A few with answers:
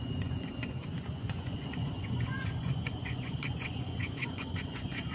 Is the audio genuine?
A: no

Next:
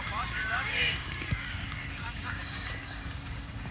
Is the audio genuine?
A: no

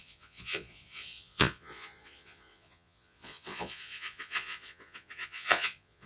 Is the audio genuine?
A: no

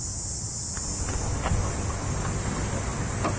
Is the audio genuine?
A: yes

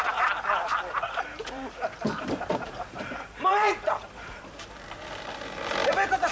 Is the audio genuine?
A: no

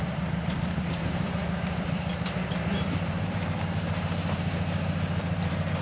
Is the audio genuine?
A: no